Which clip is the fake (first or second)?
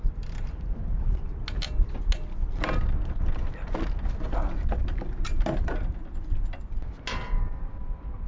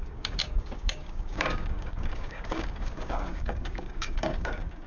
second